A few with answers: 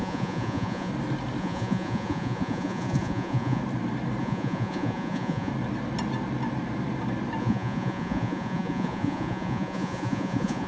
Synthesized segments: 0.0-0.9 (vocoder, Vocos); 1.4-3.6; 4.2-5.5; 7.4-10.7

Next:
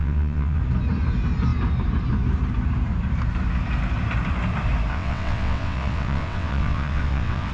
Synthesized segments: 0.0-0.6 (vocoder, WaveNeXt); 4.9-7.5

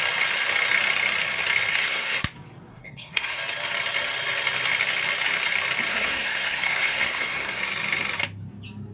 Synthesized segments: 1.7-2.2 (codec, SNAC); 2.7-3.4; 5.9-7.6